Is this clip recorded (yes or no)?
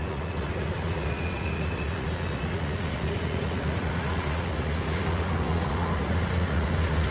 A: no